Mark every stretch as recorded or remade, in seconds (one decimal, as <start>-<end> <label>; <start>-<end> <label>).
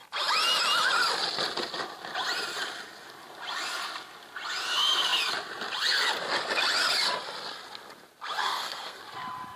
0.0-8.4 recorded; 8.4-9.0 remade; 9.0-9.6 recorded